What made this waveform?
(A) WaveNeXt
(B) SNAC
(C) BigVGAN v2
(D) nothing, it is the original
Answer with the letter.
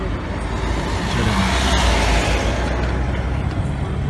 D